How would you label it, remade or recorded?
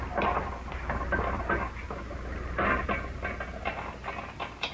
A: recorded